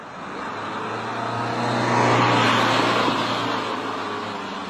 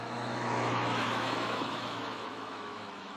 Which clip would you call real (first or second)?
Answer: first